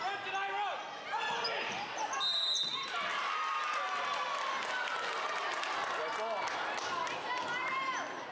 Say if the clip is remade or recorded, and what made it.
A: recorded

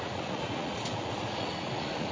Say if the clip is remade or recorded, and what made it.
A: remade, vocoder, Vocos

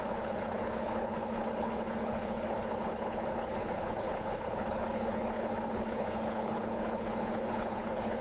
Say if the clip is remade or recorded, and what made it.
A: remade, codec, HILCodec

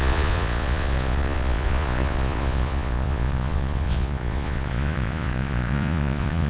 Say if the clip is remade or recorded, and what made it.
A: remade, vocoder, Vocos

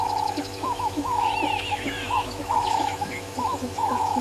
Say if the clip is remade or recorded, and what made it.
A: remade, autoencoder, DAC-VAE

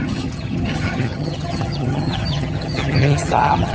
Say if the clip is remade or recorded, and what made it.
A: remade, vocoder, HiFi-GAN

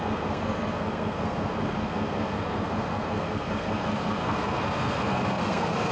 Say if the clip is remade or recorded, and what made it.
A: remade, codec, SNAC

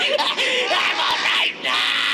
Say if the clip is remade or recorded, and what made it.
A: recorded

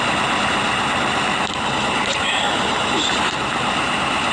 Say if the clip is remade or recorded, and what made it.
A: remade, vocoder, BigVGAN v2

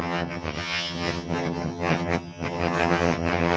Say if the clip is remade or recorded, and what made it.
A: remade, vocoder, HiFi-GAN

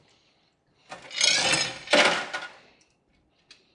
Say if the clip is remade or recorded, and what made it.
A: recorded